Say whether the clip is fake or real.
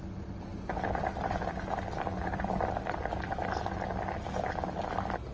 real